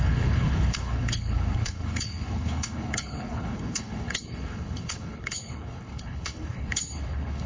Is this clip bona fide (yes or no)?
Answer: no